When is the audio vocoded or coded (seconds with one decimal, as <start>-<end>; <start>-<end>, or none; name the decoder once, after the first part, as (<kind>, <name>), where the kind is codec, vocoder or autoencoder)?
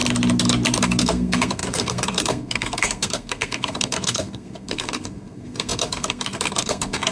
0.8-7.1 (codec, SNAC)